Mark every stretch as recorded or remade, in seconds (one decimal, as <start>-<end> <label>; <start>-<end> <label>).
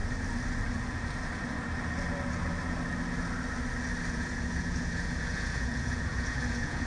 0.0-4.1 recorded; 4.1-6.9 remade